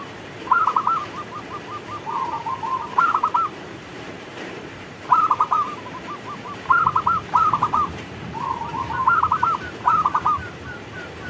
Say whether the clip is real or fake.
fake